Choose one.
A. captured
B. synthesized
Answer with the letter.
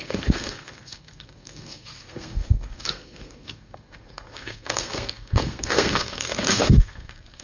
B